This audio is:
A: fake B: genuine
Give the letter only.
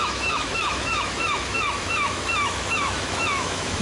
A